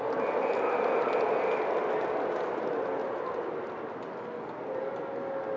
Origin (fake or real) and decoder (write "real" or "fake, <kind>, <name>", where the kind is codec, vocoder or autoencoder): real